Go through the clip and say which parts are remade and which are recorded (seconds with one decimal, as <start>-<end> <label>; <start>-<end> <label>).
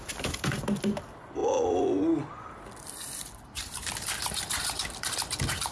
0.0-1.4 remade; 1.4-2.8 recorded; 2.8-5.7 remade